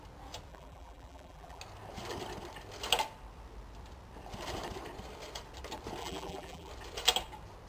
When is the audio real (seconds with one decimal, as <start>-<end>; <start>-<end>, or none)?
0.0-0.5; 1.6-6.0; 6.7-7.7